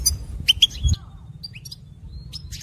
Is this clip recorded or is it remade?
recorded